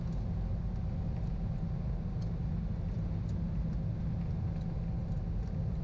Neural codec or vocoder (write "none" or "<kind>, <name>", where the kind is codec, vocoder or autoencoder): none